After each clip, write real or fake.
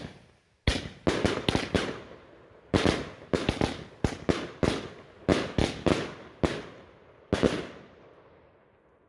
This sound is real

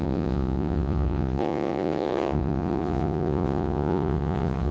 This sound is fake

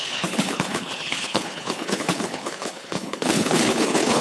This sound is fake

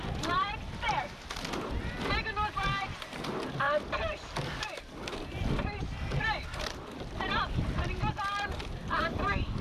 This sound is real